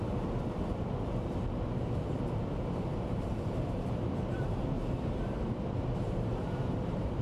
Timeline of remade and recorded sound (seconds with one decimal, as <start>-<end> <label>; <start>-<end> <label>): 0.0-2.9 recorded; 2.9-7.2 remade